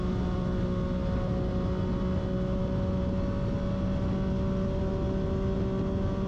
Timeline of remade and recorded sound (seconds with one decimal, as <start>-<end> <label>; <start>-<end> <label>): 0.0-6.3 recorded